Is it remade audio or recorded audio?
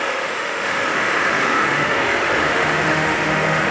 remade